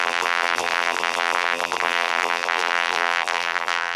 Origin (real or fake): fake